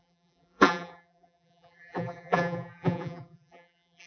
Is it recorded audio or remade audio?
remade